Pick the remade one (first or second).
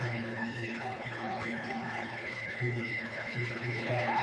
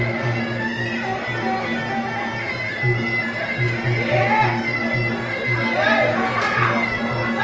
first